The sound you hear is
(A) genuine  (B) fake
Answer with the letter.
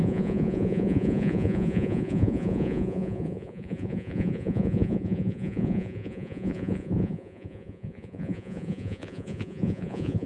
B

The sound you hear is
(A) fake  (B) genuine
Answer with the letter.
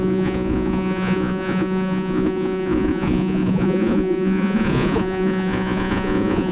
A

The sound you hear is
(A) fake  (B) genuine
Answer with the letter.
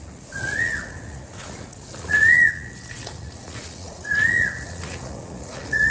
A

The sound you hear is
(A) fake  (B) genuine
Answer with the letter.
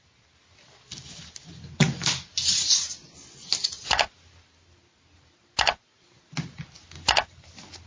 B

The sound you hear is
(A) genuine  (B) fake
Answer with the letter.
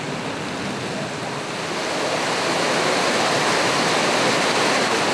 A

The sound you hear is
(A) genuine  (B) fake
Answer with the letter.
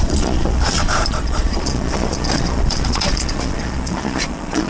B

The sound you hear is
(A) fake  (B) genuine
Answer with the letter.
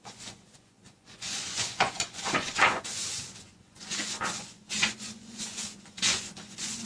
A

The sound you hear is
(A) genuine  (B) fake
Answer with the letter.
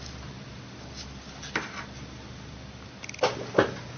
A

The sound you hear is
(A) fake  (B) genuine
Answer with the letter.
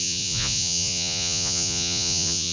A